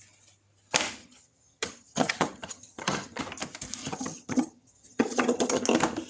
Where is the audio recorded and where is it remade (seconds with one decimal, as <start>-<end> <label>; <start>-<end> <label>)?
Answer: 0.0-1.0 recorded; 1.0-3.2 remade; 3.2-3.8 recorded; 3.8-5.6 remade; 5.6-6.1 recorded